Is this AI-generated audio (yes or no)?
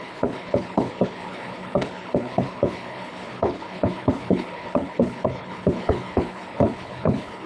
yes